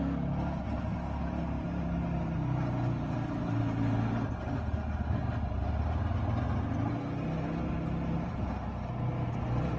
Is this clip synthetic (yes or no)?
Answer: no